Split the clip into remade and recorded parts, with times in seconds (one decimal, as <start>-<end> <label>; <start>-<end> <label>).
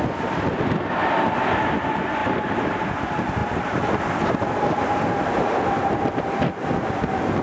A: 0.0-2.2 recorded; 2.2-2.9 remade; 2.9-7.4 recorded